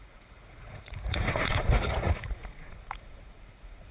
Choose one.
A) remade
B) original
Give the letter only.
A